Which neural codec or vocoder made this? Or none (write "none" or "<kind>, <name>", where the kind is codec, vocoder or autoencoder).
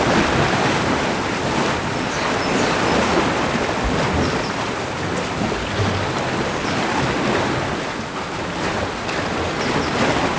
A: none